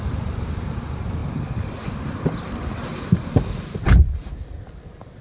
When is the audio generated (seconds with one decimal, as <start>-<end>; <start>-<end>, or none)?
1.2-4.3